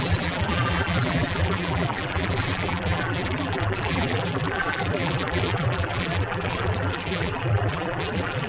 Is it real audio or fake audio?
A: fake